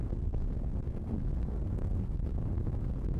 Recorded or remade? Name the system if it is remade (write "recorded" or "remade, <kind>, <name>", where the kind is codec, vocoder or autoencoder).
remade, codec, SNAC